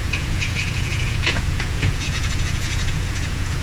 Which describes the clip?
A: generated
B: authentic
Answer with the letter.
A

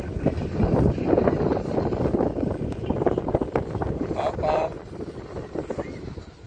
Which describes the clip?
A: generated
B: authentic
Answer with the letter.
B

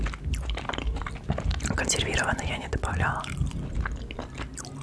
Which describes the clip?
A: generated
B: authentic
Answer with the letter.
B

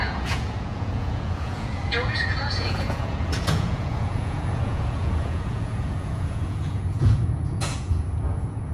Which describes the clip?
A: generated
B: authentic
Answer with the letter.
A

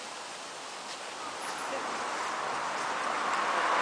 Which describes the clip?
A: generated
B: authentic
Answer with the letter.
B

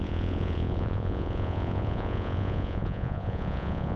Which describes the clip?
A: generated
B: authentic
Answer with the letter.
A